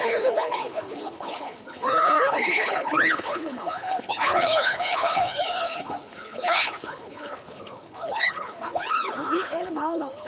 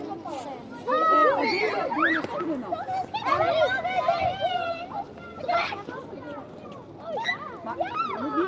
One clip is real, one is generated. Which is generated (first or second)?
first